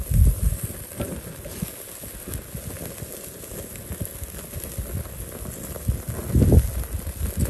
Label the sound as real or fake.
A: real